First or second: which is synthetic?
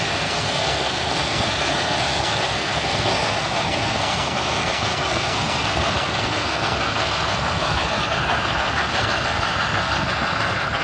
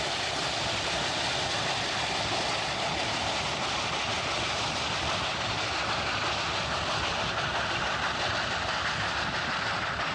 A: first